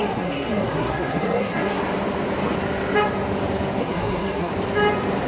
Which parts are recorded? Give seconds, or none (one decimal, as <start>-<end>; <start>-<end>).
1.8-3.8; 4.5-5.3

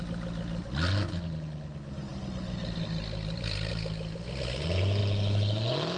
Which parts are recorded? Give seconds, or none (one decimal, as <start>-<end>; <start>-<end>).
0.0-6.0

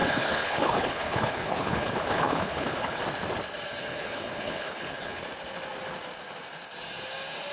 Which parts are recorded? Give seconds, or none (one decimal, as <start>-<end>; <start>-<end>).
3.0-3.8; 5.2-7.5

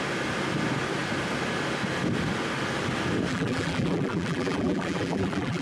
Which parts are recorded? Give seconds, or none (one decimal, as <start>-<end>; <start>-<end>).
0.0-3.3

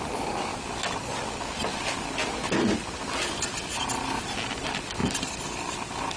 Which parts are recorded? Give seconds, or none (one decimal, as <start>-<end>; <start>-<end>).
0.0-5.0

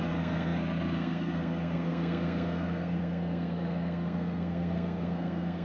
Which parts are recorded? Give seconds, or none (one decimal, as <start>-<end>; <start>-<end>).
none